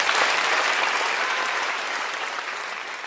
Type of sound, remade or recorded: remade